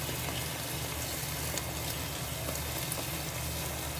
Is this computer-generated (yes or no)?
no